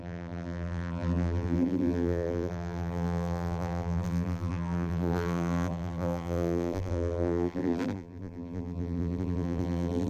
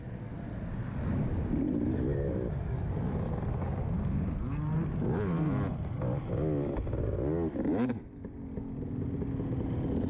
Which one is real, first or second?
second